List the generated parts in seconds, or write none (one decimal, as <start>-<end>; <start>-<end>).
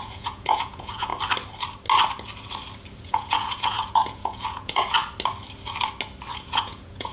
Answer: 0.0-1.1; 3.0-5.0; 6.3-7.1